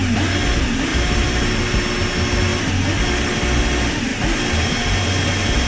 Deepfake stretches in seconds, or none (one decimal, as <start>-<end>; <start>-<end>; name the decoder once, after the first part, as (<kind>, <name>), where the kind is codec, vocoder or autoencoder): 0.9-1.8 (vocoder, BigVGAN v2); 4.1-5.7